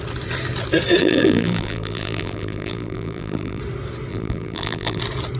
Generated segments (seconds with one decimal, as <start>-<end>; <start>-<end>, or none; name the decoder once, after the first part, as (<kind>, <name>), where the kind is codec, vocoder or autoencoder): 1.0-3.6 (vocoder, BigVGAN v2); 4.1-5.0